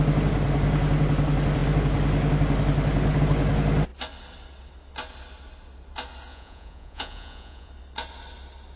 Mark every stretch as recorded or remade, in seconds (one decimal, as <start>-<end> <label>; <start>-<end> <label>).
0.0-6.3 recorded; 6.3-7.7 remade; 7.7-8.8 recorded